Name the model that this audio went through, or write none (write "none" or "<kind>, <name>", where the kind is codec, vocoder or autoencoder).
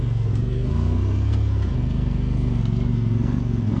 codec, SNAC